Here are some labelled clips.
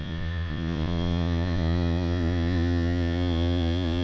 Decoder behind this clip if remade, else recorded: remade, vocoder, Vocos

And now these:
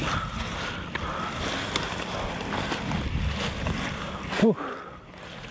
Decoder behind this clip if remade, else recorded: recorded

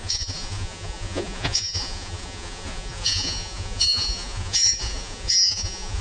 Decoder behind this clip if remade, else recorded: remade, vocoder, Vocos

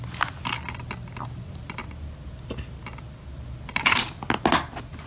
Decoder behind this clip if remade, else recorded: recorded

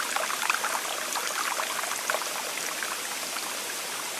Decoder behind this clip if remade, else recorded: recorded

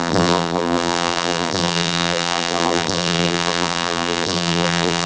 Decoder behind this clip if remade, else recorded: remade, vocoder, BigVGAN v2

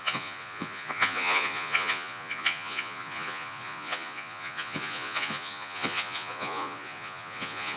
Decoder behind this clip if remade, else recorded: remade, vocoder, Vocos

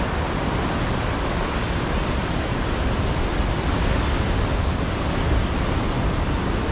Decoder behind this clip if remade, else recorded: recorded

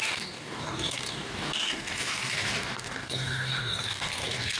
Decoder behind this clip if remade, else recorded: remade, codec, DAC